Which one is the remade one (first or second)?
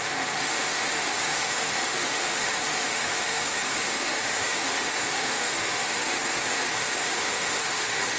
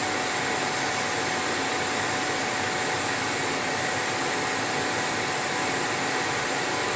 first